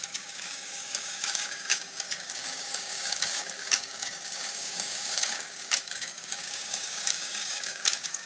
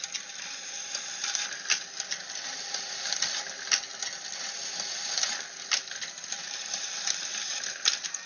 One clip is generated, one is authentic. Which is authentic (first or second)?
second